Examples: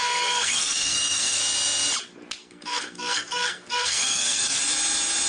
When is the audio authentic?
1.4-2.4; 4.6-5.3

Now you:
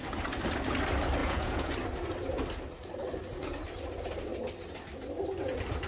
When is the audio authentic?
0.0-1.2; 1.7-5.9

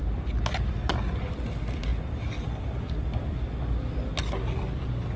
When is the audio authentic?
0.0-5.2

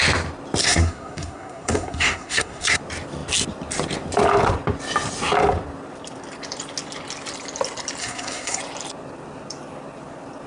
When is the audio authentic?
0.0-0.6; 2.8-8.0; 8.6-10.5

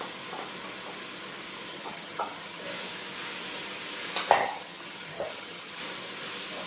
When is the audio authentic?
0.0-1.7; 2.6-4.4; 5.8-6.7

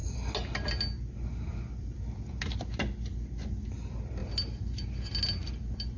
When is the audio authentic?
0.0-6.0

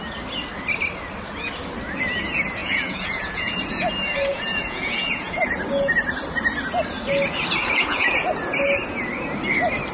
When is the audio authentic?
0.0-2.6; 3.8-4.3; 5.4-7.6; 8.3-9.9